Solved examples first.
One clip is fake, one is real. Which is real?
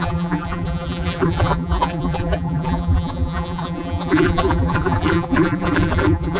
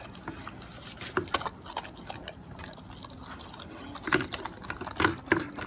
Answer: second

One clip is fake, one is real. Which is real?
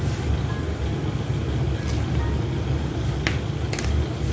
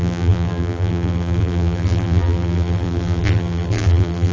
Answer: first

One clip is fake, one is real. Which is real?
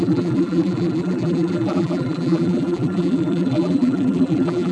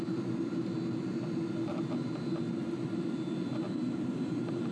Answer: second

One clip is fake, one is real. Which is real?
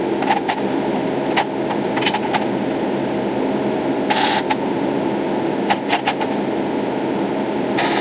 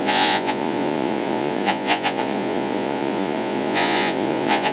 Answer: first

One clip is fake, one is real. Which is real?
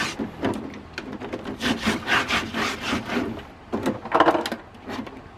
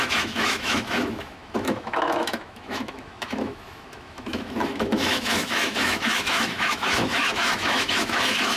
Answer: first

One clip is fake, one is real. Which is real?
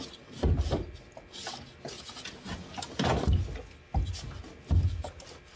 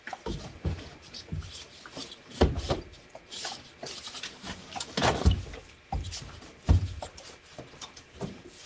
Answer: first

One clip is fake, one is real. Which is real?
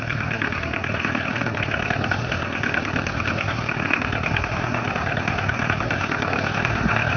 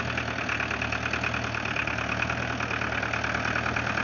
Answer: second